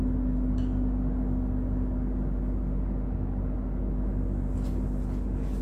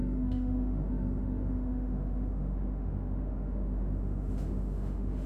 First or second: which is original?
first